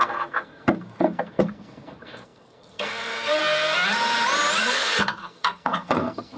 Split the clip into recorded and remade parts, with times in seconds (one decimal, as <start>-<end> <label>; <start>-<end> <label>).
0.0-3.4 remade; 3.4-4.6 recorded; 4.6-6.4 remade

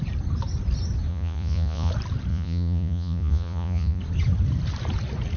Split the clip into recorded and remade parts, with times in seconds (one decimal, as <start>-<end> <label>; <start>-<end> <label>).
0.0-1.1 recorded; 1.1-1.9 remade; 1.9-2.3 recorded; 2.3-4.0 remade; 4.0-5.4 recorded

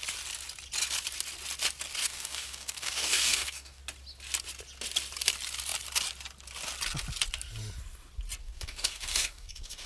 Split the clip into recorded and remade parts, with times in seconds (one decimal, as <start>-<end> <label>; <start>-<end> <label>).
0.0-2.0 recorded; 2.0-3.8 remade; 3.8-8.4 recorded; 8.4-9.9 remade

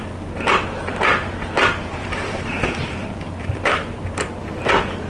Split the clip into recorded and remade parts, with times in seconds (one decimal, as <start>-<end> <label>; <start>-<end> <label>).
0.0-0.9 recorded; 0.9-4.0 remade; 4.0-5.1 recorded

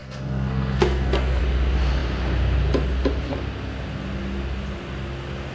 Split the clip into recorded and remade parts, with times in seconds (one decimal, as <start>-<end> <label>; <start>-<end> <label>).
0.0-1.4 remade; 1.4-5.5 recorded

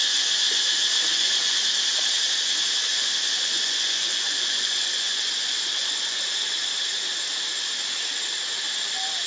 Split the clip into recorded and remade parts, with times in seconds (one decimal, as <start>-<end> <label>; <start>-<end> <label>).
0.0-0.7 remade; 0.7-1.1 recorded; 1.1-1.6 remade; 1.6-2.9 recorded; 2.9-6.2 remade; 6.2-9.3 recorded